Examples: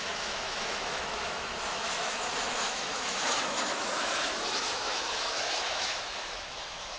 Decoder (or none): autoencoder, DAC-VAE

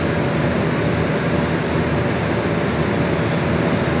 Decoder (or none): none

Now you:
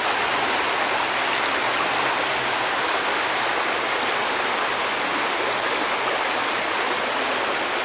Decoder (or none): none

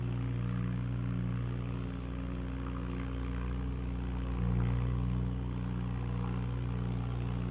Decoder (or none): none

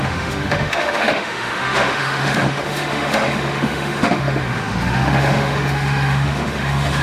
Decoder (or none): autoencoder, DAC-VAE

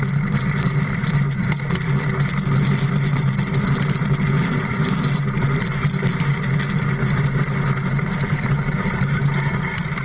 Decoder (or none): none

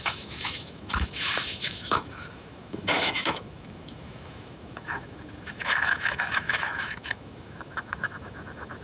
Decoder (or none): autoencoder, DAC-VAE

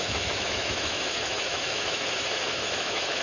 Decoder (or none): autoencoder, DAC-VAE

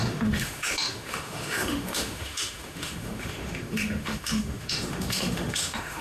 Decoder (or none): autoencoder, DAC-VAE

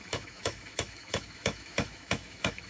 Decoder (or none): autoencoder, DAC-VAE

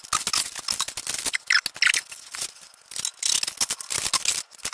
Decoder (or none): none